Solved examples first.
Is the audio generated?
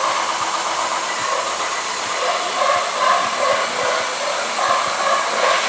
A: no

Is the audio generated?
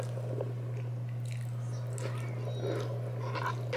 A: no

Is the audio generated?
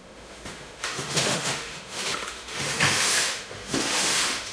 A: yes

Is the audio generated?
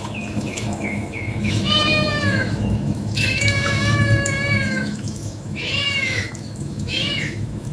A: yes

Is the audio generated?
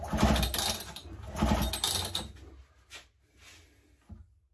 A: no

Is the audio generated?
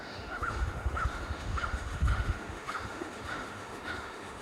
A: yes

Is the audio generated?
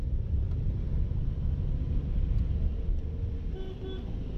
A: no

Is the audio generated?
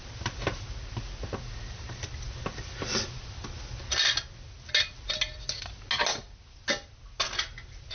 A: no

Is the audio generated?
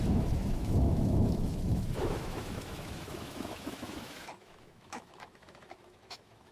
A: yes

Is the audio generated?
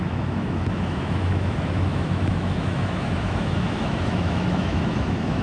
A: yes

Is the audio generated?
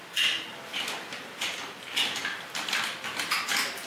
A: no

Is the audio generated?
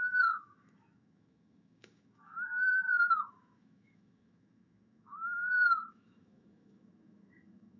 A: yes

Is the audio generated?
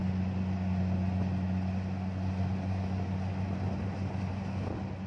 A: no